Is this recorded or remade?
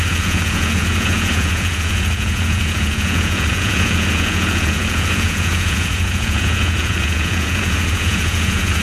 remade